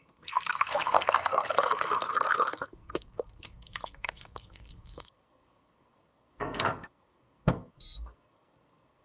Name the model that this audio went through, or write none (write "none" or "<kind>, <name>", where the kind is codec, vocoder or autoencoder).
codec, SNAC